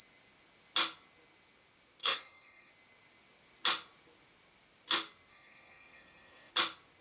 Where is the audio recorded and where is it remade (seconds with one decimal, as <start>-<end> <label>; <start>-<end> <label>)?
0.0-2.0 recorded; 2.0-2.7 remade; 2.7-5.3 recorded; 5.3-6.5 remade; 6.5-7.0 recorded